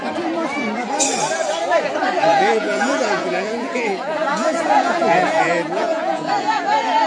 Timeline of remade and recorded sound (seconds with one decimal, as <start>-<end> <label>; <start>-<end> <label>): 0.0-2.3 recorded; 2.3-6.6 remade; 6.6-7.1 recorded